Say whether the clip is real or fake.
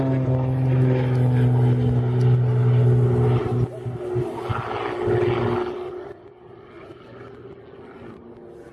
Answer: real